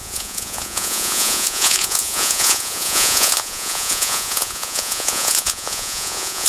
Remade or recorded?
remade